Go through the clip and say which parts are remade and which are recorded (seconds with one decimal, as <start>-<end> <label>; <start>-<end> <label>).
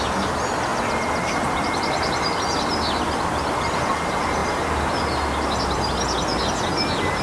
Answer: 0.0-7.2 recorded